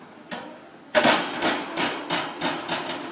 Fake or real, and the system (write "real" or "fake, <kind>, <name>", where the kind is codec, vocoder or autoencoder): real